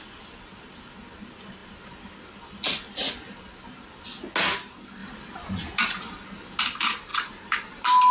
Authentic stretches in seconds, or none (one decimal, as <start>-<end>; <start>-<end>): 0.0-7.1